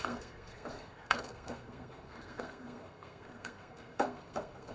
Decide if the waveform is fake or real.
fake